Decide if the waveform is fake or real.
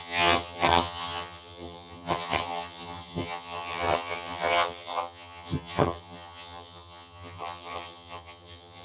fake